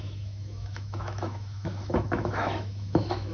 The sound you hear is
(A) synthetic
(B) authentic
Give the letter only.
A